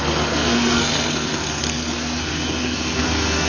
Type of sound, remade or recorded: remade